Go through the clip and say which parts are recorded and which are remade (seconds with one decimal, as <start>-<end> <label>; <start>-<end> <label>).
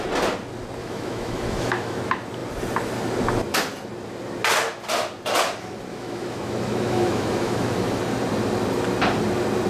0.0-0.8 recorded; 0.8-2.0 remade; 2.0-5.9 recorded; 5.9-8.0 remade; 8.0-9.7 recorded